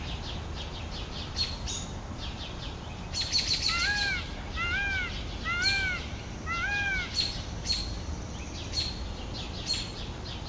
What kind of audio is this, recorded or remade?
recorded